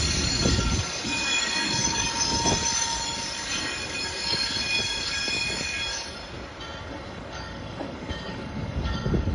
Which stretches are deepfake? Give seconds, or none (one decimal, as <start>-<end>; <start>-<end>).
0.0-6.2; 6.8-9.3